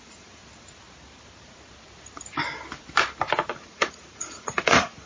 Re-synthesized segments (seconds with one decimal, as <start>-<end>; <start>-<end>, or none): 0.0-0.4; 3.5-5.1

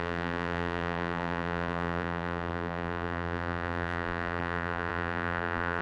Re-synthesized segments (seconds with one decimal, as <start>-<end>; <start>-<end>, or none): 0.0-5.8

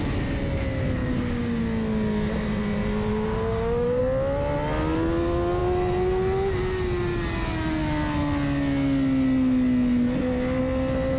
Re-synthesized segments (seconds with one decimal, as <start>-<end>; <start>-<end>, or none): 1.0-1.6; 3.1-4.0

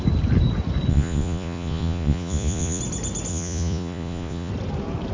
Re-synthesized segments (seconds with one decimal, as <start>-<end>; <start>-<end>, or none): 0.9-2.8; 3.3-4.5

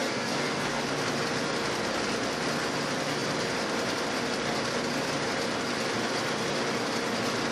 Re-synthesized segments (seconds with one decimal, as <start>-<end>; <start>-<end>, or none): 0.0-0.8

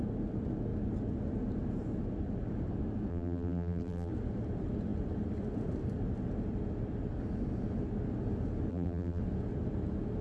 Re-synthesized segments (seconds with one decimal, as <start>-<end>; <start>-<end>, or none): 3.1-4.1; 8.7-9.2

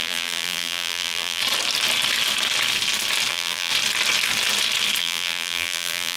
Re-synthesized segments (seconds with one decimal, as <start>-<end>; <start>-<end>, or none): 0.0-1.4; 3.3-3.7; 5.0-6.2